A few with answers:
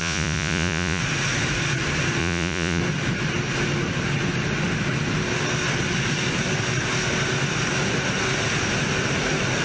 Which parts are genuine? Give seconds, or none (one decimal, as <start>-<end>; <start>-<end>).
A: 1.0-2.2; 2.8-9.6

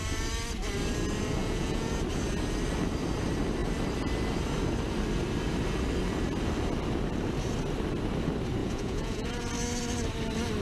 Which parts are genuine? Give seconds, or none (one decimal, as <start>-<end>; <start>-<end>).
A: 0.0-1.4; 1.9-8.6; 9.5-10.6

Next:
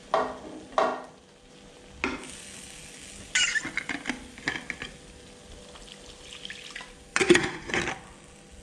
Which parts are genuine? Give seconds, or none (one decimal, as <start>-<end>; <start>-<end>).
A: 0.0-7.1; 7.8-8.6